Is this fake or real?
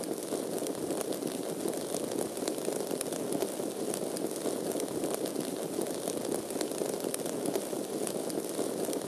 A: real